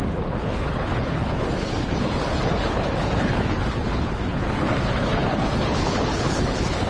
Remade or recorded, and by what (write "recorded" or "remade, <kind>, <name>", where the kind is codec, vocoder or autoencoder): remade, codec, HILCodec